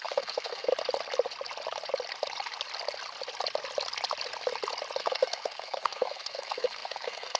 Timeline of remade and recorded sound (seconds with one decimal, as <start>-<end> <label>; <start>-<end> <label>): 0.0-0.7 remade; 0.7-5.0 recorded; 5.0-7.4 remade